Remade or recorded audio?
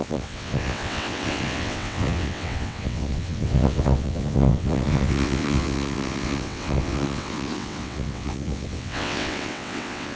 remade